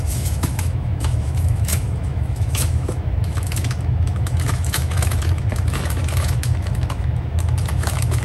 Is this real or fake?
fake